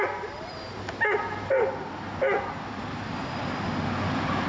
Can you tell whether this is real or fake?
real